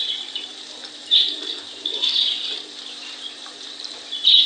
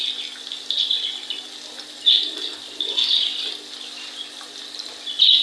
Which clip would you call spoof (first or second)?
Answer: first